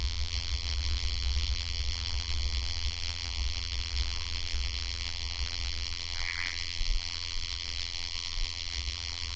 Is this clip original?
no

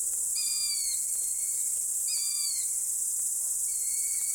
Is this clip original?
yes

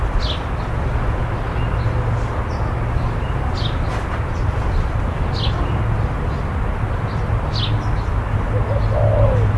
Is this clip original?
yes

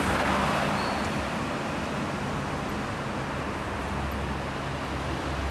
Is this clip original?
yes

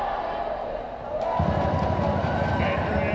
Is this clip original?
yes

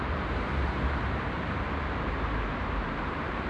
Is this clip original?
no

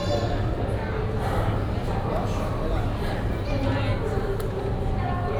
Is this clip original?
yes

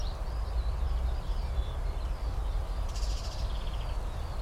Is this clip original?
yes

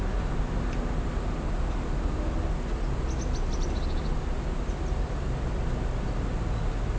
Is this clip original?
yes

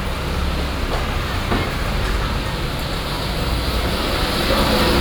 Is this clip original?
yes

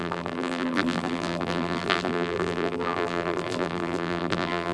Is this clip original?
no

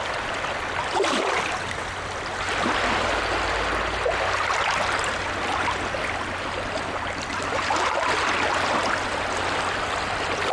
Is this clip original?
yes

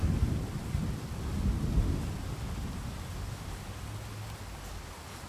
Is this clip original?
yes